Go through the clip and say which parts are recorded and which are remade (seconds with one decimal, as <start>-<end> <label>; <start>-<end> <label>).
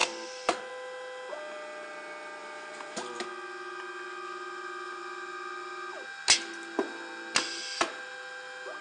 0.0-0.7 remade; 0.7-2.4 recorded; 2.4-3.2 remade; 3.2-8.8 recorded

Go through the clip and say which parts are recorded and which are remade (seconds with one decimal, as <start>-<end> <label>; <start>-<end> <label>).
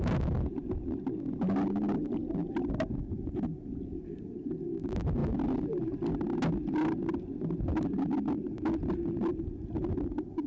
0.0-10.5 recorded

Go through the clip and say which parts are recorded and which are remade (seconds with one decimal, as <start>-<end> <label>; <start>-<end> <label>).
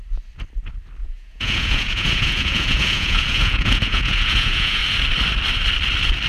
0.0-1.0 recorded; 1.0-4.8 remade; 4.8-6.3 recorded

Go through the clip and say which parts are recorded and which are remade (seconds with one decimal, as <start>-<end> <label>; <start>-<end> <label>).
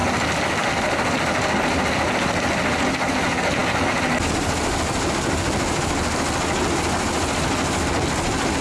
0.0-8.6 recorded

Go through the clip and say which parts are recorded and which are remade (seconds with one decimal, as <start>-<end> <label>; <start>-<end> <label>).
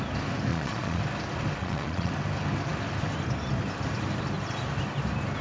0.0-0.5 recorded; 0.5-1.0 remade; 1.0-1.6 recorded; 1.6-2.1 remade; 2.1-5.4 recorded